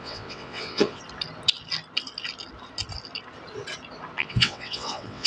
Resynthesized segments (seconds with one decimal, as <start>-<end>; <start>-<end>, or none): 0.0-1.0; 4.2-5.3